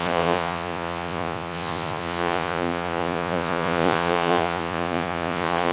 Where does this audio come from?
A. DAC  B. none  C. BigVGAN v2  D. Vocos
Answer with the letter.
D